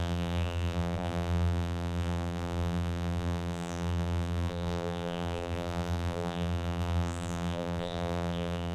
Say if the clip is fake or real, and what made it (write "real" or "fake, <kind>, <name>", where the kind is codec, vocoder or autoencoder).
fake, vocoder, BigVGAN v2